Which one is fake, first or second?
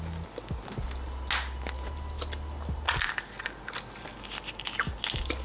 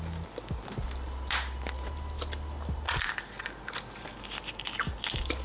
second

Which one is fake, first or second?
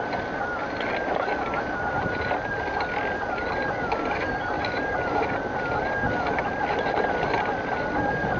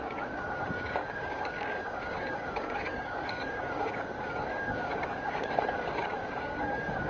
second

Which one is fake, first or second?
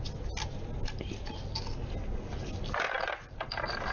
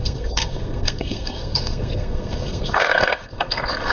second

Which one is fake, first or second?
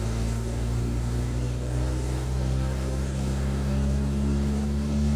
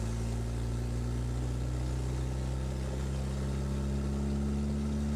first